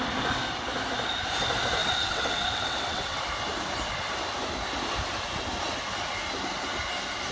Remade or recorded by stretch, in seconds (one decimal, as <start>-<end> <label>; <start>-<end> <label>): 0.0-1.8 recorded; 1.8-3.2 remade; 3.2-7.3 recorded